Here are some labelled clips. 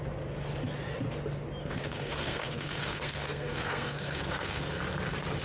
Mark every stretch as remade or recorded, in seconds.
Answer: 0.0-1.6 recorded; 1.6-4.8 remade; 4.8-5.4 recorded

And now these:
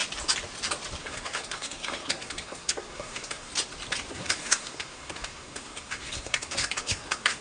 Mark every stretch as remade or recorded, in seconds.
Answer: 0.0-1.0 recorded; 1.0-3.5 remade; 3.5-4.1 recorded; 4.1-7.4 remade

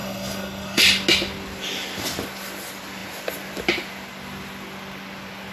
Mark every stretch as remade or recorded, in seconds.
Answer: 0.0-0.8 remade; 0.8-5.5 recorded